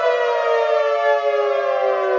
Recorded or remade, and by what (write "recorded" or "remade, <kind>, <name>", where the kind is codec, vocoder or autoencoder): recorded